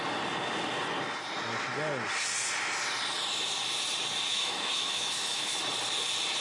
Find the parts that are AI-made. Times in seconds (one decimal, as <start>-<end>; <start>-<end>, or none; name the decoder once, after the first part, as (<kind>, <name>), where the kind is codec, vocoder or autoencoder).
4.3-5.6 (autoencoder, DAC-VAE)